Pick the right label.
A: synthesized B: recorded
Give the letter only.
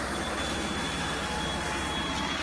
B